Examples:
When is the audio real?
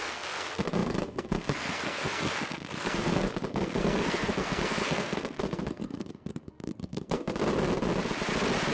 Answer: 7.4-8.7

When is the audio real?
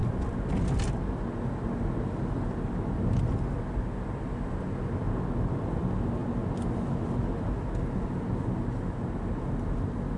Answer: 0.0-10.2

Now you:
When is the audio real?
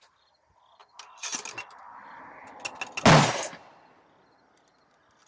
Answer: 0.0-5.3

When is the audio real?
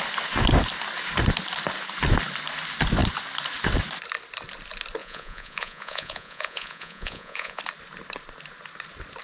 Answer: 0.0-5.0; 7.6-9.2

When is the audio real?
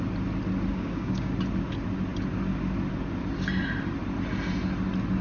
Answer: 0.0-0.7; 1.3-5.2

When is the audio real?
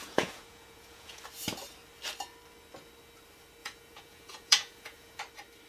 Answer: 1.2-3.6; 5.2-5.7